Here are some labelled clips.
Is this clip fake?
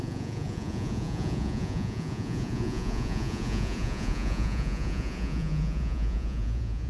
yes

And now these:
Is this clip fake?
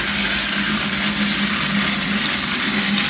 no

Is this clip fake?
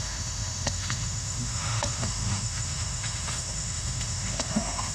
yes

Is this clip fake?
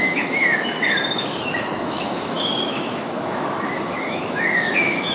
yes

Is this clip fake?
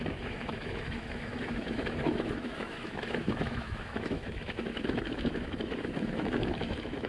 yes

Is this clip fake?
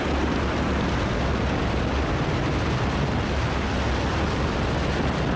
no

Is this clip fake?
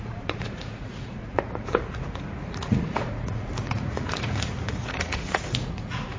yes